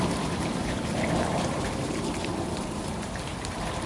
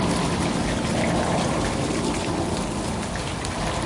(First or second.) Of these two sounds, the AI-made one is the first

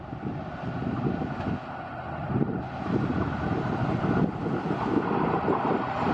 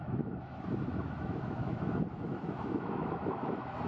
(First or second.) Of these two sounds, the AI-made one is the second